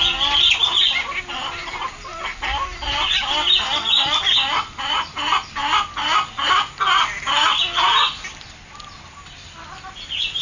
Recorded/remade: recorded